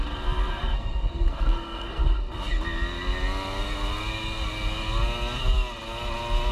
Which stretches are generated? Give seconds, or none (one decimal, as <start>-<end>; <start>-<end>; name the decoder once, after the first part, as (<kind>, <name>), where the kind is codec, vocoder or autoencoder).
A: 0.5-2.0 (codec, SNAC)